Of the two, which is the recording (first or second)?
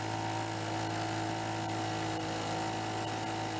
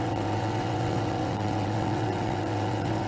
first